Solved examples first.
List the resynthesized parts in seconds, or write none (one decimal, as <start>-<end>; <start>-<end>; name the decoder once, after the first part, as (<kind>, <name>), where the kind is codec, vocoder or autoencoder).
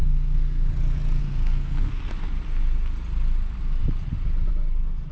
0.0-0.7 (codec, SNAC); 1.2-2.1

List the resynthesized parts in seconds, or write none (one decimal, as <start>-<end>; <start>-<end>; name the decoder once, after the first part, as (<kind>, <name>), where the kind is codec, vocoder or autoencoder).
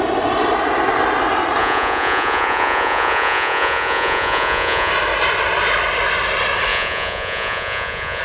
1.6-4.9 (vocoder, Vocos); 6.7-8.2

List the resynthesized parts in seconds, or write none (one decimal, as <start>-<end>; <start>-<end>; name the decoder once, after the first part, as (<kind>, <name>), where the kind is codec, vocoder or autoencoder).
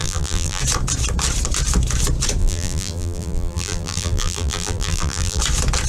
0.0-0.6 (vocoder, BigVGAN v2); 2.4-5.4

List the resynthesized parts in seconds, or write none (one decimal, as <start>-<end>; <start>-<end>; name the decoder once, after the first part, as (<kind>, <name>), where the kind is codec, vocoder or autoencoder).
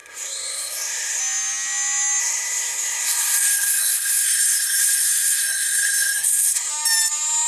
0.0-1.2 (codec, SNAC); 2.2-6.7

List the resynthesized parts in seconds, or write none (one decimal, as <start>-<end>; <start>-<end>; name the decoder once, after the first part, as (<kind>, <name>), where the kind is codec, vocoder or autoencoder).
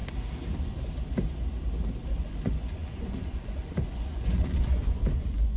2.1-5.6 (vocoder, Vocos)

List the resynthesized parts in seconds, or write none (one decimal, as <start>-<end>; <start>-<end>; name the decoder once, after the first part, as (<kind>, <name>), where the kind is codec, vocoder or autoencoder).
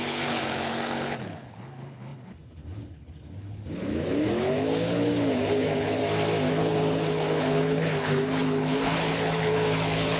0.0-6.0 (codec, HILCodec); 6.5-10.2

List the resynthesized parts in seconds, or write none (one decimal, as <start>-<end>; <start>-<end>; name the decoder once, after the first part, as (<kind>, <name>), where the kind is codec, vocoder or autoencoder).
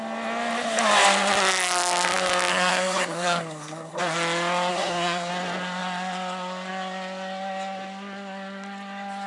2.5-4.0 (codec, SNAC); 4.7-5.3